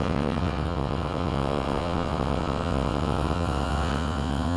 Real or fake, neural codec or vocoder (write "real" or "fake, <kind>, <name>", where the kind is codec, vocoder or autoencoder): fake, vocoder, WaveNeXt